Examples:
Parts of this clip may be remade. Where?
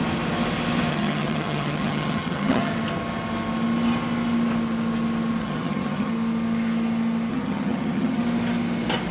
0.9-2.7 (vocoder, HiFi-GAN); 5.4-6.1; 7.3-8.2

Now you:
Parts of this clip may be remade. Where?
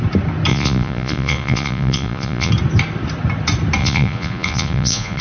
0.5-2.5 (vocoder, Vocos); 3.8-5.2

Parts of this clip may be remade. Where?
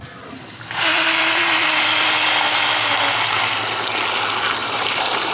4.6-5.3 (vocoder, BigVGAN v2)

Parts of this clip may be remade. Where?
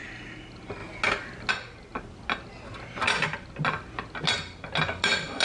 none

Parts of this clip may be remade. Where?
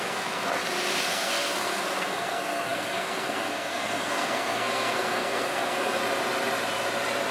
0.0-0.6 (codec, SNAC); 1.1-6.0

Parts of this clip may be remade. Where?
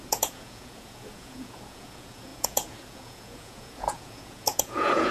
0.0-5.1 (vocoder, Vocos)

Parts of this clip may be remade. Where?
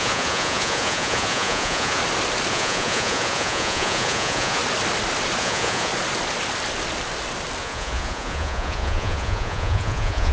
0.0-2.0 (vocoder, Vocos); 2.5-4.6; 5.4-5.9; 7.6-10.3